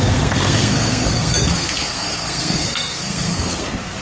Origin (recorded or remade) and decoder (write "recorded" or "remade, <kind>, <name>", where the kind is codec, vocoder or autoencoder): remade, codec, SNAC